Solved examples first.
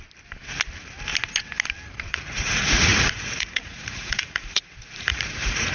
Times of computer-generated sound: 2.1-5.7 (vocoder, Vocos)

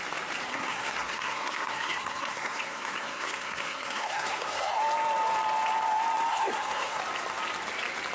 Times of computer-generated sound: 0.5-4.8 (codec, SNAC); 6.3-7.0